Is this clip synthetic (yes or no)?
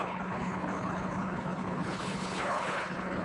yes